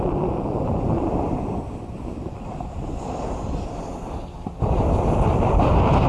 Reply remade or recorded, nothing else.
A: recorded